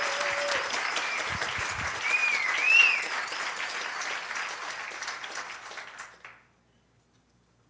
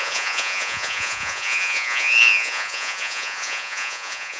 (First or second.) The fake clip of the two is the second